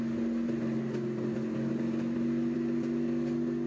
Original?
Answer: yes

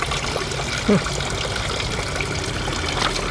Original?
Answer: yes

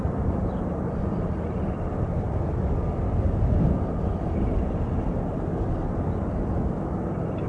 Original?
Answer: yes